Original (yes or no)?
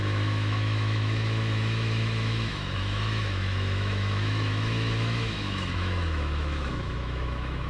no